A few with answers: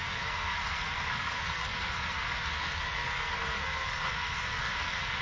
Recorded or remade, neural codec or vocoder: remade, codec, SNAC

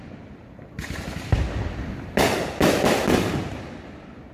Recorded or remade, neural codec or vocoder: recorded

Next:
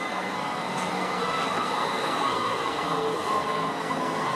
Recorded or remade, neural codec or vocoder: remade, codec, SNAC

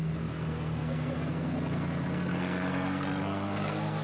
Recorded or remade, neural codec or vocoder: remade, codec, SNAC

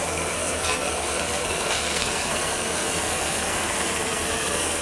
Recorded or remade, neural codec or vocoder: remade, codec, SNAC